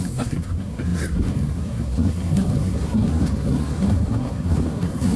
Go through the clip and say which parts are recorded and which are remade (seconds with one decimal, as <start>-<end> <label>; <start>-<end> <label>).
0.0-5.2 remade